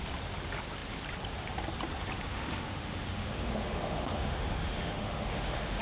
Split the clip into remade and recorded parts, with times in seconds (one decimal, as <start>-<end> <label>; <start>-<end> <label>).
0.0-2.3 recorded; 2.3-5.8 remade